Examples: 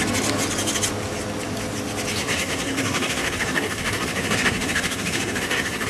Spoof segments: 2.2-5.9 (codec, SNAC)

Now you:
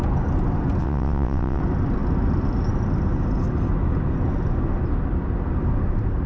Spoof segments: 0.8-1.6 (vocoder, WaveNeXt)

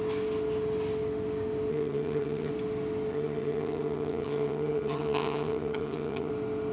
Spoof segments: 1.7-2.5 (vocoder, HiFi-GAN); 3.1-6.3

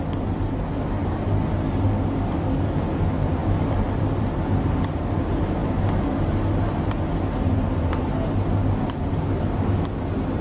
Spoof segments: 3.4-4.2 (vocoder, BigVGAN v2)

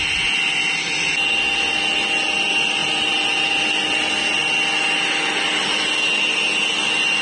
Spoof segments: none

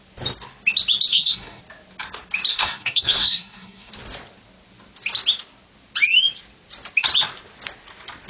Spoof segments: 1.1-1.6 (codec, SNAC); 2.5-3.9

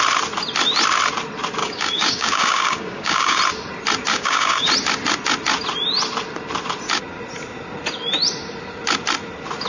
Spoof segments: 1.6-3.4 (codec, DAC); 4.1-4.7